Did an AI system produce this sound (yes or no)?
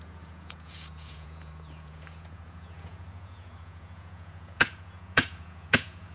yes